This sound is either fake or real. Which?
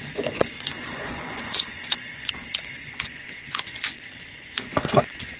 fake